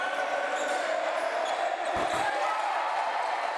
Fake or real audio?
real